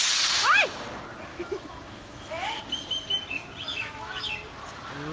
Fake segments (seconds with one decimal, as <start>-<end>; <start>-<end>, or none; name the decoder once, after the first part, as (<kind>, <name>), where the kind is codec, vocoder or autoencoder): 1.3-2.6 (autoencoder, DAC-VAE); 3.7-4.3